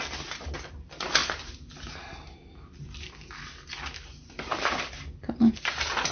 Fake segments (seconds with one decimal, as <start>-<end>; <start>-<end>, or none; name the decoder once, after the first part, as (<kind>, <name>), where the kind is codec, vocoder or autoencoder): none